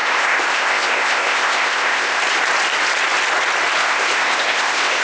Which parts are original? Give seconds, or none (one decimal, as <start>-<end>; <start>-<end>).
2.2-3.8